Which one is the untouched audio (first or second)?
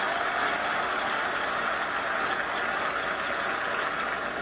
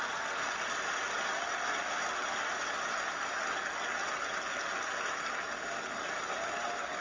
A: first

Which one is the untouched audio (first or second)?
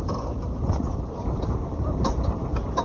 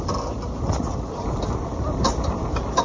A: second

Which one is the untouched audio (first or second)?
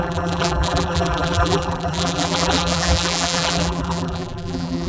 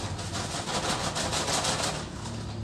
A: second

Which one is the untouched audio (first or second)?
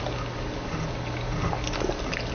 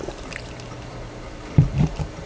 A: first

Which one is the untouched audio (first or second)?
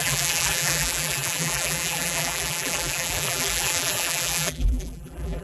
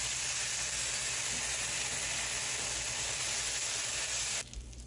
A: second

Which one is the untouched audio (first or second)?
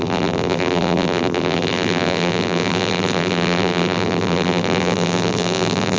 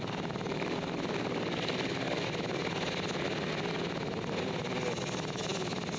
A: second